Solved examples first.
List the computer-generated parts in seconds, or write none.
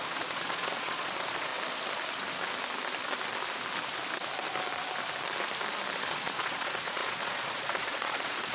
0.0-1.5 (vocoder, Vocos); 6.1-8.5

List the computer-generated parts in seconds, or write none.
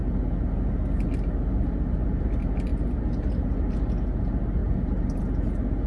2.7-3.7 (vocoder, BigVGAN v2); 4.6-5.2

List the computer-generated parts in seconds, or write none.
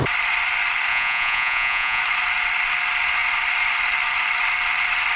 0.9-2.0 (vocoder, Vocos)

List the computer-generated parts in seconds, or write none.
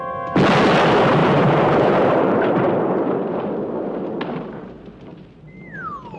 1.2-2.7 (vocoder, BigVGAN v2)